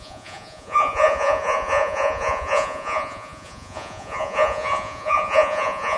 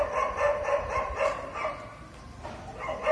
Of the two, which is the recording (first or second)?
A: second